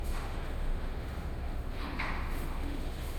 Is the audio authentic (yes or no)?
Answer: no